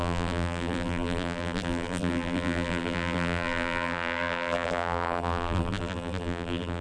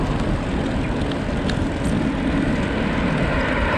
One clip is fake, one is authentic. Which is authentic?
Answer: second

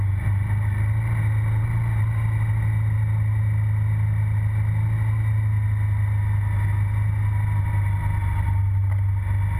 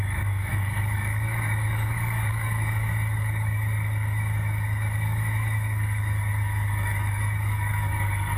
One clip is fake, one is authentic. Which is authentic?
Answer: first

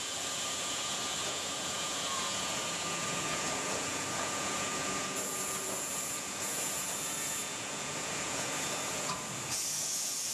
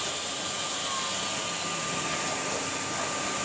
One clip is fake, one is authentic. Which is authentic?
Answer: second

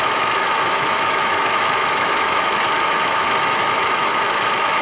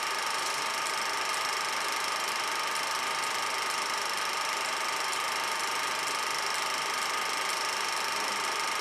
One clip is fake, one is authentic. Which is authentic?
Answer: second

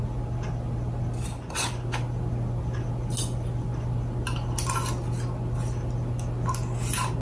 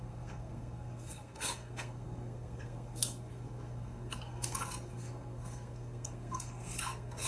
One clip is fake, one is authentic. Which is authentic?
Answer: first